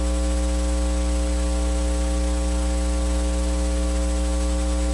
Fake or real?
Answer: real